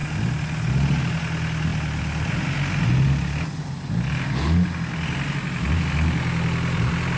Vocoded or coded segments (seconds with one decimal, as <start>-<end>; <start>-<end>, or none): none